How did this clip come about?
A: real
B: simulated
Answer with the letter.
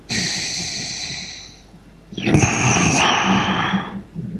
A